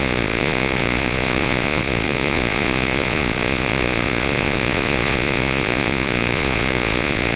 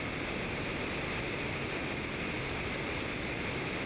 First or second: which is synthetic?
first